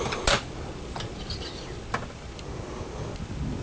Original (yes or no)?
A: yes